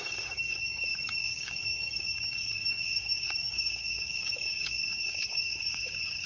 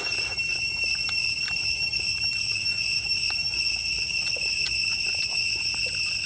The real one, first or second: second